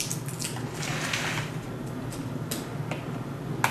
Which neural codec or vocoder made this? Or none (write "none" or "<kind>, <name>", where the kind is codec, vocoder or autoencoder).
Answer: none